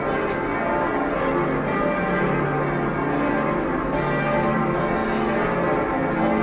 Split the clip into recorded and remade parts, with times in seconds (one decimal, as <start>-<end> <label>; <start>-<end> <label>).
0.0-6.4 recorded